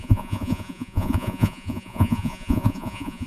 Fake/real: fake